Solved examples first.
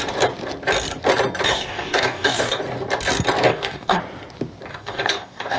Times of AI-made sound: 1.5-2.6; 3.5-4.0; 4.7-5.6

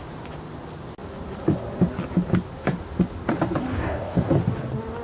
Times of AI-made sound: 3.7-4.3

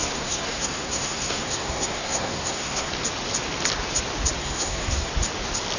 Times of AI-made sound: 0.0-2.9; 4.4-5.1

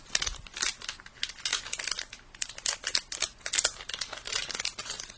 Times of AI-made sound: none